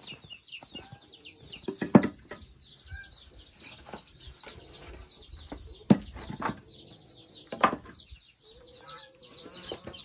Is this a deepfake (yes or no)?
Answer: no